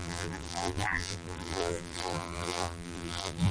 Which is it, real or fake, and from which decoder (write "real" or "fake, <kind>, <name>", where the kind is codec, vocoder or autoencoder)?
fake, vocoder, BigVGAN v2